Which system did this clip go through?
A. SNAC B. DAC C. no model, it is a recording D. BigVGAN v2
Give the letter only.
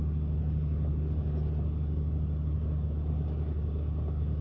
C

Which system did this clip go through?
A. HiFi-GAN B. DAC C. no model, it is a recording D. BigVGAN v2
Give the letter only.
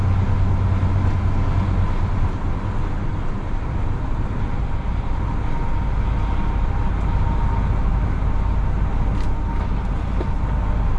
C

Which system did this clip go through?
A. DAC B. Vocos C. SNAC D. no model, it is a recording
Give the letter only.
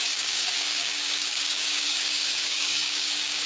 A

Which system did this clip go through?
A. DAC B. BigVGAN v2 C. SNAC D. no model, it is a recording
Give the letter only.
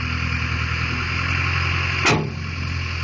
D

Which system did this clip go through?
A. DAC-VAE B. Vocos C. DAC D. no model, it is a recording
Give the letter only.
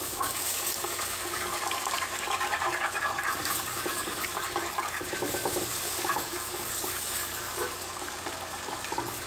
C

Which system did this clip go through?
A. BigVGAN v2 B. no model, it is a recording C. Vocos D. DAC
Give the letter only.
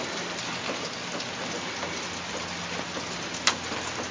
B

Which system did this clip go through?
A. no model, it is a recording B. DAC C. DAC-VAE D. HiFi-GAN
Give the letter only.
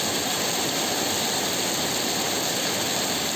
A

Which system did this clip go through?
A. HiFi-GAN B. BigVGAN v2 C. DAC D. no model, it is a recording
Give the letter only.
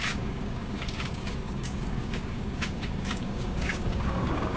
C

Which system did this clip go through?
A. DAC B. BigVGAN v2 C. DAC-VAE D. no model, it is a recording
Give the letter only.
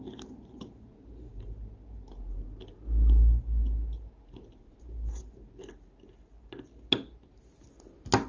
D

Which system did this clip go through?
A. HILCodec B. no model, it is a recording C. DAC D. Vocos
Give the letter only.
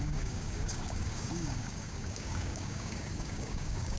C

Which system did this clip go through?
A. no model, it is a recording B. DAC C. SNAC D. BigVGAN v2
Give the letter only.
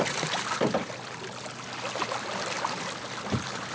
A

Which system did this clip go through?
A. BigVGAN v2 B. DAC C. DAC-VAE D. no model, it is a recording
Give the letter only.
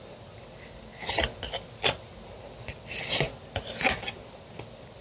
D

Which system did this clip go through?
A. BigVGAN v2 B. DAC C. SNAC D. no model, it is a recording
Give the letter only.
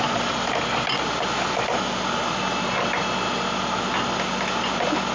D